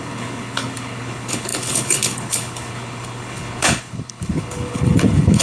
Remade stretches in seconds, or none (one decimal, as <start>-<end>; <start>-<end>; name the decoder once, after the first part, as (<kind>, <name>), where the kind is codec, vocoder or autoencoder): 0.0-5.4 (codec, HILCodec)